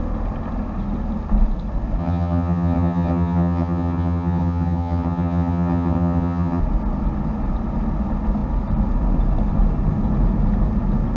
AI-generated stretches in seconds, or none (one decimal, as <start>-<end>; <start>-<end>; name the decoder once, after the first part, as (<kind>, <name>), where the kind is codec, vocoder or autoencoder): 2.0-6.6 (vocoder, HiFi-GAN)